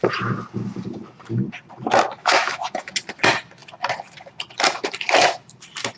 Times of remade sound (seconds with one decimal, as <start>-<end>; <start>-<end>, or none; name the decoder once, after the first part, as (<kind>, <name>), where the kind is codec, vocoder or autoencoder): 2.2-2.9 (autoencoder, DAC-VAE)